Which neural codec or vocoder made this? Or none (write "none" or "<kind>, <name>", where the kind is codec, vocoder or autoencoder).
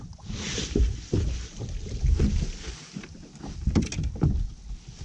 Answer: none